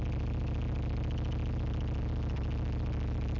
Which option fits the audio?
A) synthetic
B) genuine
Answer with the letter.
B